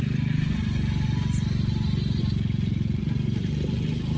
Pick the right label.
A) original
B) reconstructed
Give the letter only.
A